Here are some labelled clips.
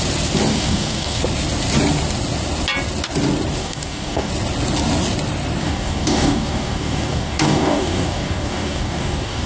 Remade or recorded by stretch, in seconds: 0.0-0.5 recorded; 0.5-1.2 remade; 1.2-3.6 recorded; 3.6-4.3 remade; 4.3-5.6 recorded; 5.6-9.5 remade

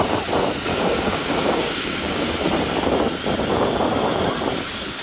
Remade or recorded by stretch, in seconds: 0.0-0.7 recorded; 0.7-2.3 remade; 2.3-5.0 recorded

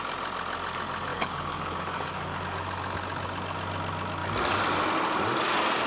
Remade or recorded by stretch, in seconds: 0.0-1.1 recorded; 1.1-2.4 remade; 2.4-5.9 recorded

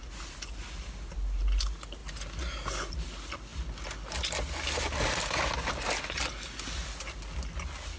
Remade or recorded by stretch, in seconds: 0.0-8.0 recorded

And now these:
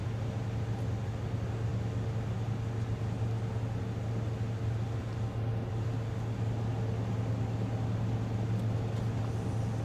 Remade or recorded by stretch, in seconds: 0.0-9.8 recorded

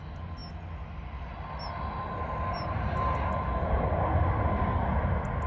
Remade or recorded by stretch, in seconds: 0.0-5.5 recorded